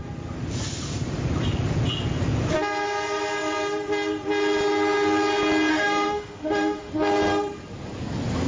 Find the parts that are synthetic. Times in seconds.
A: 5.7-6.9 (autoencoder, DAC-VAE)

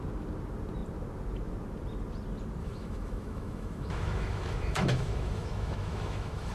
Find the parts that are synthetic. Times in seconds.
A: 2.6-6.5 (autoencoder, DAC-VAE)